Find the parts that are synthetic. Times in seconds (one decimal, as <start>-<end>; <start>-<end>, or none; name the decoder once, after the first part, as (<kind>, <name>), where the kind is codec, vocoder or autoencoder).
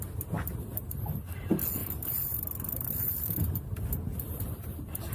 1.8-5.1 (vocoder, BigVGAN v2)